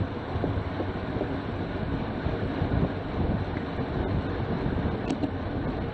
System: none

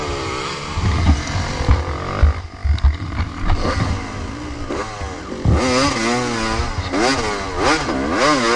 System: none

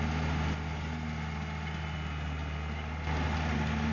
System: none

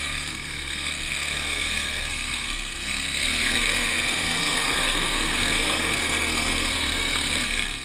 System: codec, SNAC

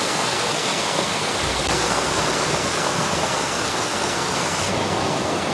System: codec, SNAC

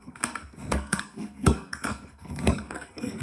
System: codec, SNAC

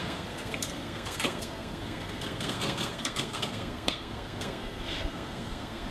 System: codec, SNAC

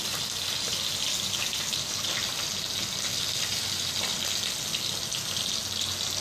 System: none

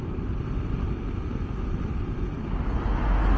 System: none